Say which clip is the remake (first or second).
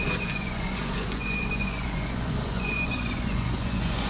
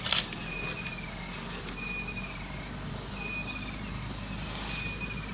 first